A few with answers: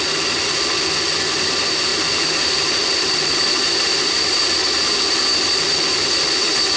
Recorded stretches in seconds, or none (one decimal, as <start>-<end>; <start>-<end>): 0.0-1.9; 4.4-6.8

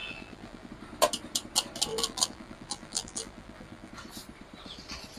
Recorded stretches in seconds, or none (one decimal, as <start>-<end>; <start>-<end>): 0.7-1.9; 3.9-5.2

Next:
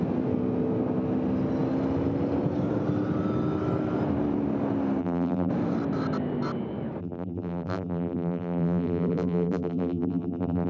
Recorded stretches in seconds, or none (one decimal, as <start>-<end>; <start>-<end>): 0.0-5.0; 5.5-7.0